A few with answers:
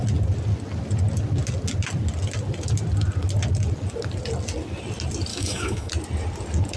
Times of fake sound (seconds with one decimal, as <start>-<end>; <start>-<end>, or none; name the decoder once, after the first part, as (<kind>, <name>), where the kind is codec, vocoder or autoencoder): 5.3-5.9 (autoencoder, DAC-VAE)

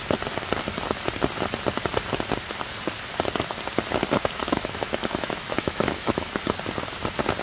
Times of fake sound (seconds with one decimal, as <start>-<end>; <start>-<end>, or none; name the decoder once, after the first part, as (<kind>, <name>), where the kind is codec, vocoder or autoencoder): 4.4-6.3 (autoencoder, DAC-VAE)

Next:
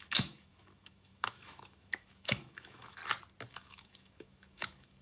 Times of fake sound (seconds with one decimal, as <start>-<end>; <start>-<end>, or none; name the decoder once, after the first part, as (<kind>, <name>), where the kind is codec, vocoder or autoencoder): 0.0-3.0 (autoencoder, DAC-VAE); 3.5-5.0